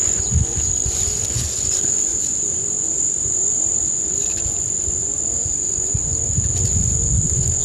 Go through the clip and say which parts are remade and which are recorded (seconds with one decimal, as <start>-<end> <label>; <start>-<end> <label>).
0.0-7.6 remade